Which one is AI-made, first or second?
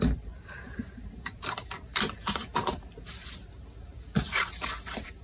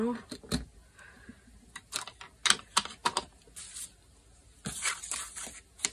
first